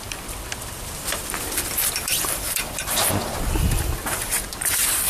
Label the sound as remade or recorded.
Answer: remade